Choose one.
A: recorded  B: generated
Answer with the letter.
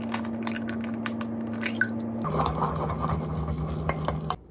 A